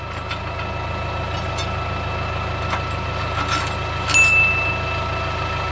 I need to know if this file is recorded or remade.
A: recorded